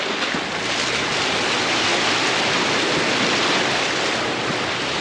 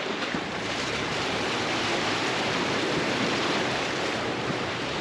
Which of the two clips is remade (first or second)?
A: second